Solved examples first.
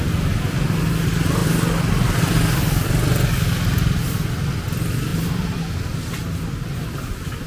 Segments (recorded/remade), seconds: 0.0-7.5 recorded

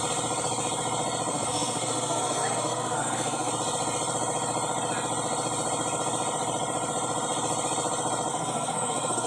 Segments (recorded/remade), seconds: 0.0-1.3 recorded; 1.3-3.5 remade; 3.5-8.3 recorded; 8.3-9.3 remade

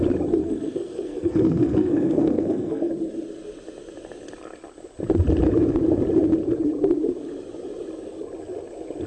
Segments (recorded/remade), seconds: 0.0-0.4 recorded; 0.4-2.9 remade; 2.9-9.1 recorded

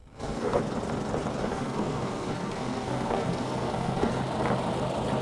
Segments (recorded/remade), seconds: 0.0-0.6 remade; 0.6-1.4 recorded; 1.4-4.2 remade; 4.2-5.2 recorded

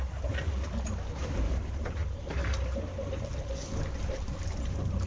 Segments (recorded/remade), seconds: 0.0-5.1 recorded

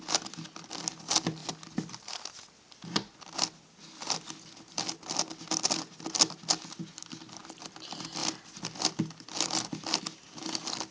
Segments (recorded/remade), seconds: 0.0-10.9 recorded

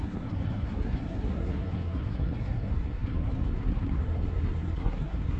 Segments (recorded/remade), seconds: 0.0-5.4 remade